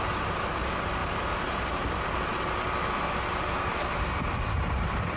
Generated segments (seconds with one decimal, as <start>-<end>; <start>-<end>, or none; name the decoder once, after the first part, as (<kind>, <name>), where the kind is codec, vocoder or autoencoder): 1.0-1.8 (vocoder, BigVGAN v2)